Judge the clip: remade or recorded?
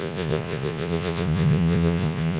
remade